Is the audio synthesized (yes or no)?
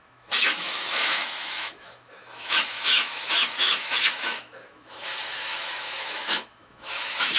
yes